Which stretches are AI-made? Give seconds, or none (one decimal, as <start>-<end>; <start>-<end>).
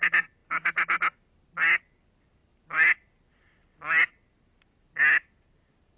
none